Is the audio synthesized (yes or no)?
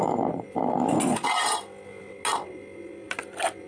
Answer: no